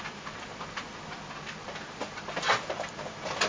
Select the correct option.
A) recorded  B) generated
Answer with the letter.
A